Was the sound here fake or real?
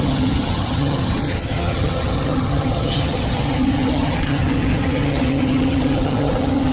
fake